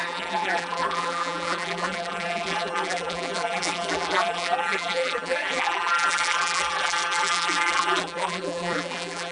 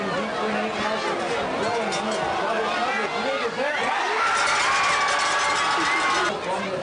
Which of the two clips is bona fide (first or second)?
second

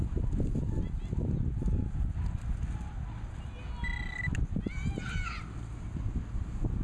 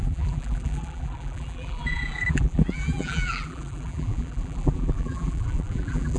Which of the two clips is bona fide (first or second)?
first